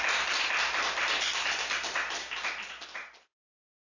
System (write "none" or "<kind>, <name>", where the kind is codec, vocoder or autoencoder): none